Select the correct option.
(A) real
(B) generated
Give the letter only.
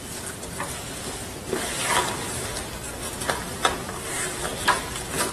A